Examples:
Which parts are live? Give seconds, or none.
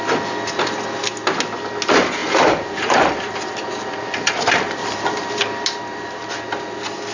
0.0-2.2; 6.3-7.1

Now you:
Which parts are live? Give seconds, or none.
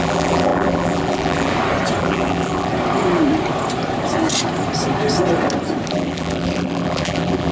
1.5-2.0; 2.7-5.9